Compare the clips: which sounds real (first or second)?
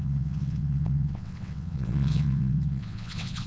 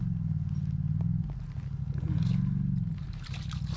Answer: second